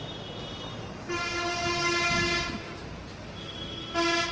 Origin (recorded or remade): recorded